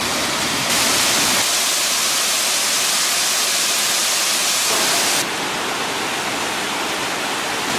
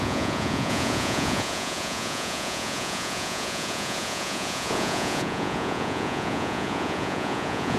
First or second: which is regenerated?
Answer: second